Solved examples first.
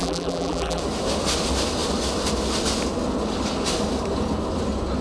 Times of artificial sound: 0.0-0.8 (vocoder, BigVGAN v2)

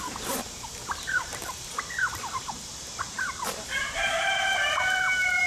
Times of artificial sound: 0.0-5.5 (vocoder, BigVGAN v2)

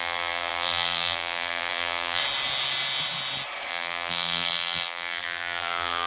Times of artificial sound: 0.0-2.2 (vocoder, BigVGAN v2); 3.7-6.1